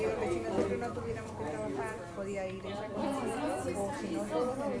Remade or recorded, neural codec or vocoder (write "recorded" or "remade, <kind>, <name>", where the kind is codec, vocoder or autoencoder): recorded